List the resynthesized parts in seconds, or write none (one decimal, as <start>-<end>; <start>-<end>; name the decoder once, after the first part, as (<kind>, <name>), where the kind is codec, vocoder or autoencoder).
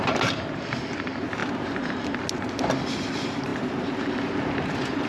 0.0-1.4 (vocoder, BigVGAN v2); 3.1-5.1